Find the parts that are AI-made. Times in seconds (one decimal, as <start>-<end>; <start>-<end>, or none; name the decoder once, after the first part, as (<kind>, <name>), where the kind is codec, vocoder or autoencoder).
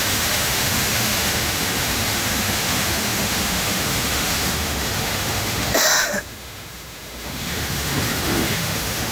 0.0-9.1 (autoencoder, DAC-VAE)